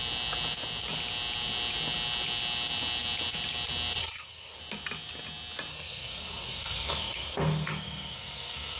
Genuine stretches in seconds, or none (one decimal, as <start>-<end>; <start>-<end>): 0.0-4.0; 4.6-5.7